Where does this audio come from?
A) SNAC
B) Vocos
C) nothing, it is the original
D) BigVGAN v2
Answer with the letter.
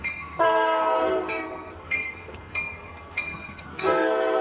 A